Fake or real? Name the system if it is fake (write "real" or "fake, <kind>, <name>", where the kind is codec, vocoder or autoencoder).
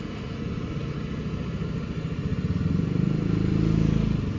real